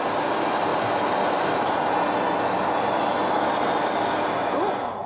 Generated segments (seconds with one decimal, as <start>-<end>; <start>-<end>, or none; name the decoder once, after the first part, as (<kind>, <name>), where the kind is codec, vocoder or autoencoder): none

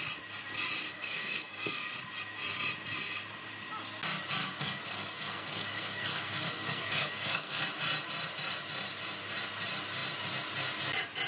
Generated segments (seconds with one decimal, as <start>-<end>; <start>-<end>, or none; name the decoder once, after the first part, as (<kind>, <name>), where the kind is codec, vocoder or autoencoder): 0.9-1.8 (codec, SNAC); 4.4-7.6

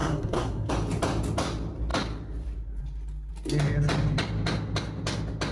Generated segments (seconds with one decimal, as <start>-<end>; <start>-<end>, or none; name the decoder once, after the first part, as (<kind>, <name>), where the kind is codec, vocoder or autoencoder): 0.0-0.7 (codec, SNAC)

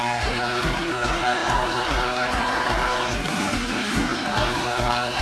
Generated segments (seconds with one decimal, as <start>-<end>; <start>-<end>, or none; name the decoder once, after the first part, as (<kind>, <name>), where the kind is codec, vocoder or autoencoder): 0.0-5.2 (codec, SNAC)

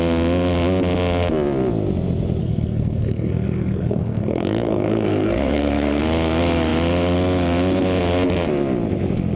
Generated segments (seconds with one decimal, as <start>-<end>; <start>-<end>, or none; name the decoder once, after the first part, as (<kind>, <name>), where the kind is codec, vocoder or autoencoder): 2.4-6.0 (codec, SNAC)

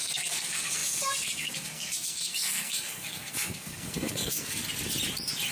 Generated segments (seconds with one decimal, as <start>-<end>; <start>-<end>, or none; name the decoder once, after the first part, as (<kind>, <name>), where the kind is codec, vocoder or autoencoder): 0.0-4.6 (codec, SNAC)

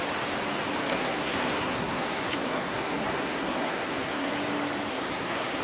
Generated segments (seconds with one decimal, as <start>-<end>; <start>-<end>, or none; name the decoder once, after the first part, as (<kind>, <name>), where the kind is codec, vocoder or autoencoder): 0.9-4.3 (codec, SNAC); 4.9-5.6

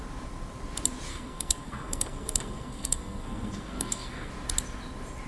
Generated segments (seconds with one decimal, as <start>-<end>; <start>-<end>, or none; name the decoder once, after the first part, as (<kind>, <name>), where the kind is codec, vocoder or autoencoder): 1.1-4.3 (codec, SNAC)